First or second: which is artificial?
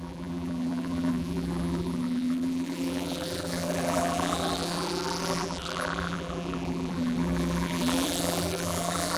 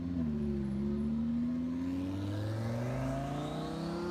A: first